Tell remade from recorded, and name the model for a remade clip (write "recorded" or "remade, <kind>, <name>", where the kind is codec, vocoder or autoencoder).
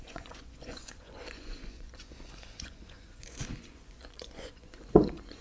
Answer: remade, vocoder, Vocos